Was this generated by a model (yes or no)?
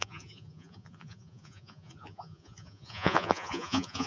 yes